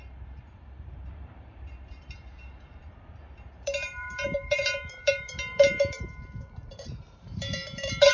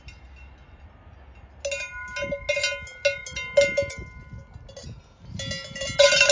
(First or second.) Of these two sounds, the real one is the second